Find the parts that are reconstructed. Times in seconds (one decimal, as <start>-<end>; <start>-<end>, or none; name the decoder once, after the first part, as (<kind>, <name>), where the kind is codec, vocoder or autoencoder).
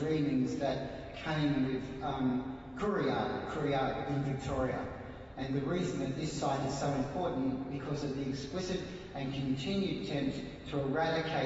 2.3-2.8 (vocoder, Vocos); 3.3-8.6; 10.0-10.8